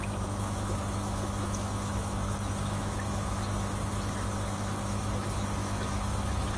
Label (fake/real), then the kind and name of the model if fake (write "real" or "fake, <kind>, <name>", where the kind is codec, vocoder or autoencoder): fake, autoencoder, DAC-VAE